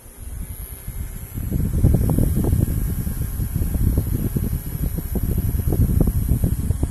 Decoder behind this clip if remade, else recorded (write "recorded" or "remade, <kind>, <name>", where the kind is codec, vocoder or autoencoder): recorded